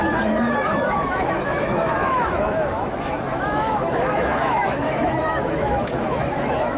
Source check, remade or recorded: remade